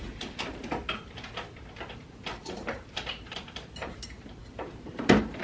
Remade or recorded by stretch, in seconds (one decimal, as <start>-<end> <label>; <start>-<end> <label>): 0.0-0.6 remade; 0.6-2.0 recorded; 2.0-5.4 remade